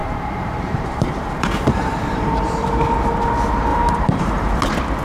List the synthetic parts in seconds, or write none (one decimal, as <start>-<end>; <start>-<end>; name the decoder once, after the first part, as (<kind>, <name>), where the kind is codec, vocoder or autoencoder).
0.0-2.7 (vocoder, BigVGAN v2); 3.7-4.6